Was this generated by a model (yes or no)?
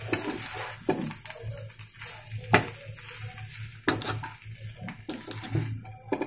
no